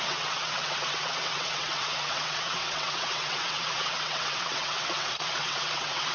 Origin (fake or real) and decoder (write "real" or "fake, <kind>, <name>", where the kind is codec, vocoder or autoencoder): fake, vocoder, WaveNeXt